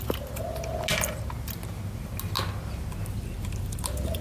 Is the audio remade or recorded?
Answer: recorded